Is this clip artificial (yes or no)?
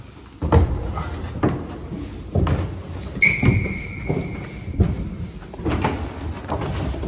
no